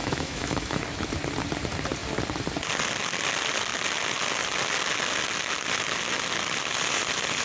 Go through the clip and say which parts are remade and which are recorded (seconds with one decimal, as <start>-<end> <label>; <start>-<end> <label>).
0.0-0.8 remade; 0.8-7.4 recorded

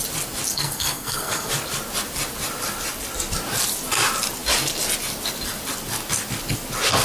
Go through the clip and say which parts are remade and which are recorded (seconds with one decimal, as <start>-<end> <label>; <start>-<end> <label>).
0.0-0.5 recorded; 0.5-1.5 remade; 1.5-7.0 recorded

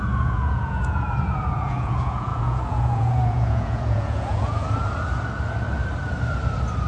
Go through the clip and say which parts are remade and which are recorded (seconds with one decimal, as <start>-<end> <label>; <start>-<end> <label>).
0.0-4.6 remade; 4.6-6.9 recorded

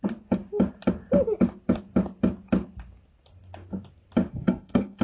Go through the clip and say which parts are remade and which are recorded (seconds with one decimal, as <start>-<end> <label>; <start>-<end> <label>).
0.0-4.3 recorded; 4.3-5.0 remade

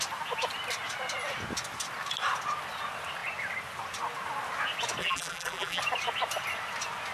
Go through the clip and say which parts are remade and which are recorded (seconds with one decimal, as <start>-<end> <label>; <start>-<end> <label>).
0.0-5.0 recorded; 5.0-5.8 remade; 5.8-7.1 recorded

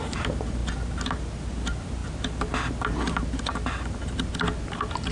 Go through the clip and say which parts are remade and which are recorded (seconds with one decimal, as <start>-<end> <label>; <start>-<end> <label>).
0.0-5.1 recorded

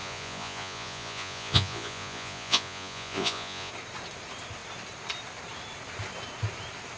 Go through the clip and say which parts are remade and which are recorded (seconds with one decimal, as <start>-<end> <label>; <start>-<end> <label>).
0.0-3.7 remade; 3.7-7.0 recorded

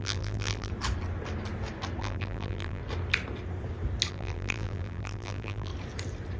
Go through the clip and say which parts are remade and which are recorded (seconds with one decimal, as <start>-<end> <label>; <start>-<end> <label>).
0.0-0.7 remade; 0.7-2.0 recorded; 2.0-2.8 remade; 2.8-4.1 recorded; 4.1-5.7 remade; 5.7-6.4 recorded